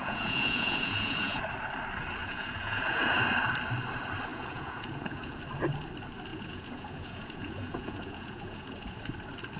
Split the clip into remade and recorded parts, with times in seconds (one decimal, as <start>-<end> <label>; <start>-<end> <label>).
0.0-1.4 remade; 1.4-2.2 recorded; 2.2-3.2 remade; 3.2-4.3 recorded; 4.3-5.4 remade; 5.4-6.3 recorded; 6.3-9.0 remade; 9.0-9.6 recorded